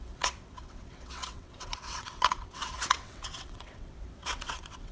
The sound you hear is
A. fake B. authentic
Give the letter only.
A